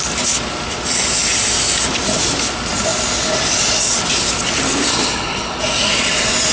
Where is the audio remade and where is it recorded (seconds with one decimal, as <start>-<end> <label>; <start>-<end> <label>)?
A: 0.0-4.9 recorded; 4.9-5.6 remade; 5.6-6.5 recorded